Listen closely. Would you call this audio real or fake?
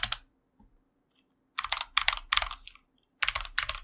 real